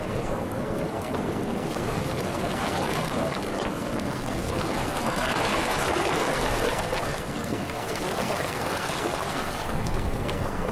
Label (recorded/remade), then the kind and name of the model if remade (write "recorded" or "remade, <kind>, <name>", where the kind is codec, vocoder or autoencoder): remade, codec, SNAC